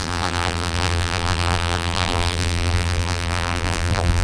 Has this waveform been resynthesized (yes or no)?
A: yes